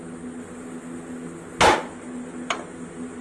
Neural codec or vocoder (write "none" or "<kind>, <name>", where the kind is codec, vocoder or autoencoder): none